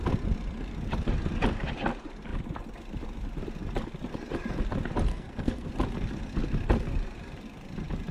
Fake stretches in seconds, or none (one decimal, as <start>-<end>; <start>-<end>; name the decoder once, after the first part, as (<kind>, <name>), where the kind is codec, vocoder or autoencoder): 5.1-5.7 (codec, SNAC)